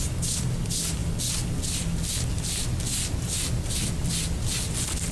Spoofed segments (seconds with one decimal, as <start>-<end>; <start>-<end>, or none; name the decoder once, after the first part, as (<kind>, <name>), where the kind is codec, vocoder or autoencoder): none